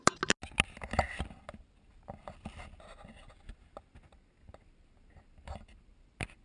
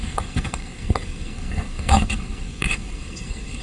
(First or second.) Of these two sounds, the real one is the first